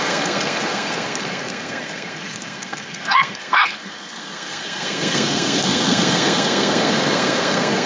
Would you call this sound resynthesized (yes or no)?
yes